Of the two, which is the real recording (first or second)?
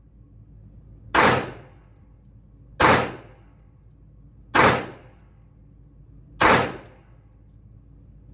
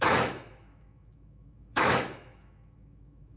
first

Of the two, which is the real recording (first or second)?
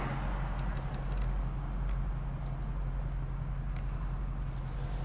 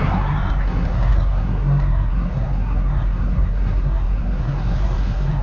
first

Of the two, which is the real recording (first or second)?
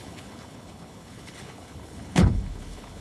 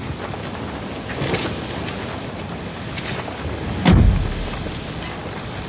second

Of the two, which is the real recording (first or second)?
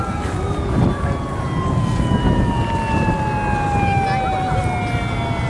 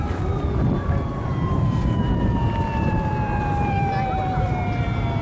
first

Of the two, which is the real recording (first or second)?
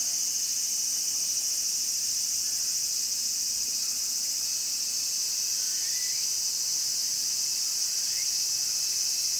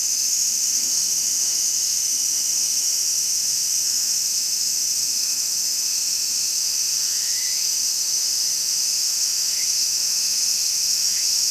first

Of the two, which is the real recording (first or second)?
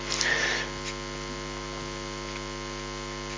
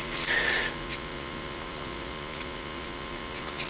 first